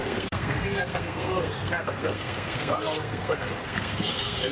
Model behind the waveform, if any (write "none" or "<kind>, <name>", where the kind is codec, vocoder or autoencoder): codec, SNAC